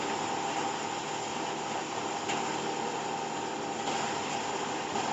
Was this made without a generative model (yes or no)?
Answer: yes